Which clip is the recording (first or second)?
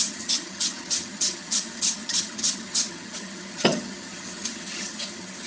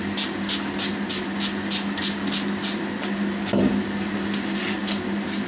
second